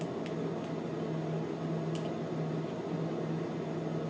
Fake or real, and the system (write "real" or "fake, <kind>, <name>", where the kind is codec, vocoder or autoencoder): real